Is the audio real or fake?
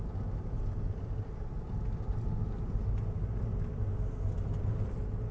real